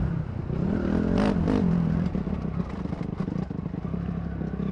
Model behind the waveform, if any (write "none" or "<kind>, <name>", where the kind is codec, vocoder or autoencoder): none